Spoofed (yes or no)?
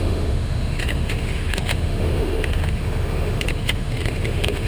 yes